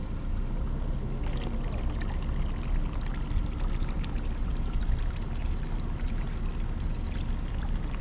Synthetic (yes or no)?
no